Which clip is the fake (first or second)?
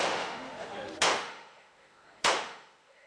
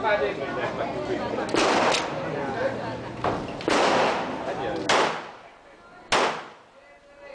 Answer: first